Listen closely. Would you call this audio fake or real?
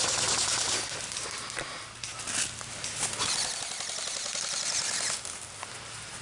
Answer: real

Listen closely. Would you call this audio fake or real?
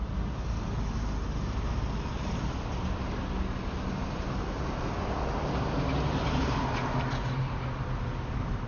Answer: real